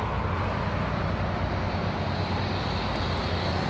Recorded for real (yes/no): yes